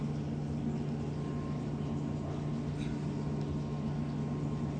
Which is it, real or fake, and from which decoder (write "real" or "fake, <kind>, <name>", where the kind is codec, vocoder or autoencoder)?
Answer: real